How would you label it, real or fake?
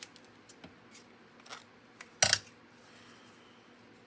real